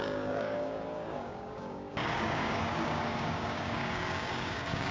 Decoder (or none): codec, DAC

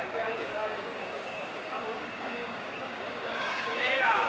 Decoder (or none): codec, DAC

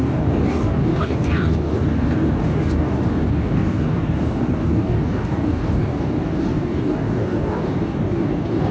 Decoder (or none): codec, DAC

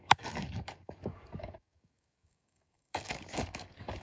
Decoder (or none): codec, DAC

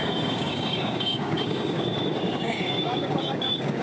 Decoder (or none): codec, DAC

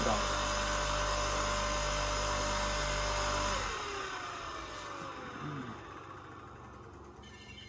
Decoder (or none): none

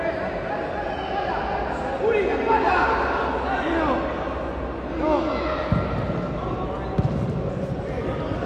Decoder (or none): none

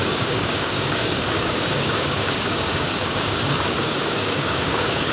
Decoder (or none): codec, DAC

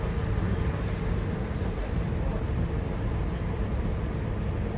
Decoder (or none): none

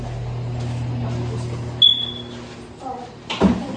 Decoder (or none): none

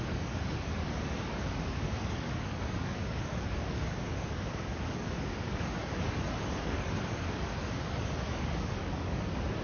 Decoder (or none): codec, DAC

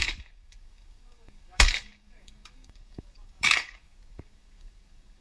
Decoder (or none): codec, DAC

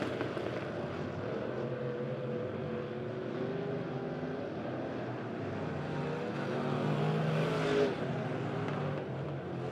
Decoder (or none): none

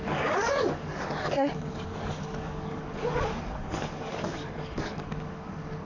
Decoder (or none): codec, DAC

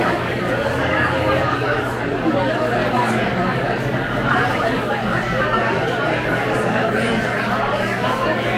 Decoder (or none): codec, DAC